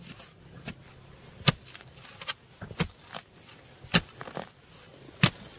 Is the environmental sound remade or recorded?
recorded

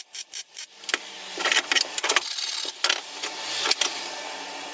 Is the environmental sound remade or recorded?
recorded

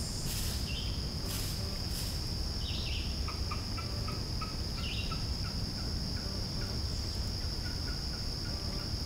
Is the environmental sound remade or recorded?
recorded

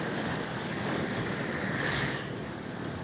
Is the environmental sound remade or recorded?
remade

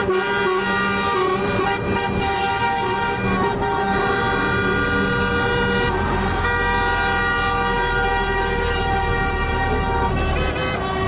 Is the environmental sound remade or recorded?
recorded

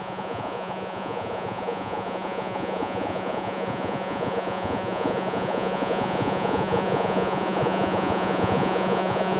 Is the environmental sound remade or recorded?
remade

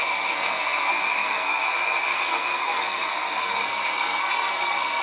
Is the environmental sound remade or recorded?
remade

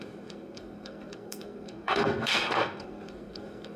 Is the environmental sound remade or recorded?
remade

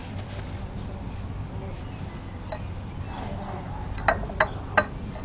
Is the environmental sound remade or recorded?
recorded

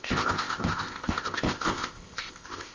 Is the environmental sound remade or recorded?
remade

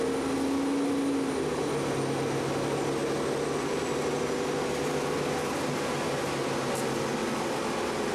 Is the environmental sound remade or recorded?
recorded